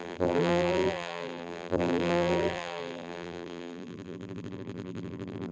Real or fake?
fake